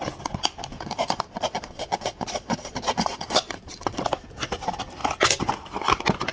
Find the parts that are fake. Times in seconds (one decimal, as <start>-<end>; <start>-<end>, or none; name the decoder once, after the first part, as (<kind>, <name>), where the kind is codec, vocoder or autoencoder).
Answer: 0.7-4.0 (vocoder, Vocos)